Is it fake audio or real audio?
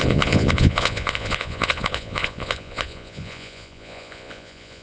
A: fake